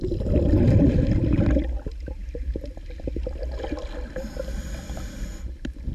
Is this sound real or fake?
real